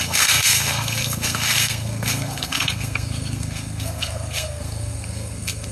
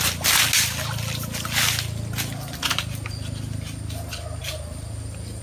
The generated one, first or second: first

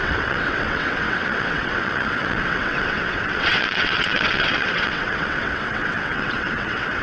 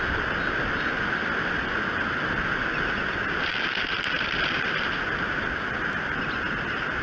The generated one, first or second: first